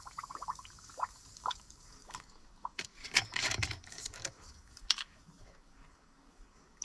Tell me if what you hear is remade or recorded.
remade